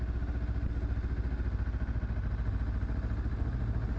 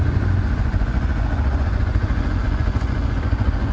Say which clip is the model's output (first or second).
second